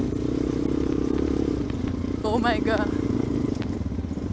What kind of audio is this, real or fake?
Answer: real